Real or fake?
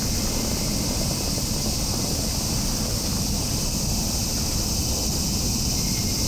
real